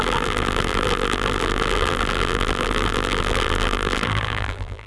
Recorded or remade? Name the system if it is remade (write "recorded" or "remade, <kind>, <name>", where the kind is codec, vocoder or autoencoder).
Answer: remade, vocoder, BigVGAN v2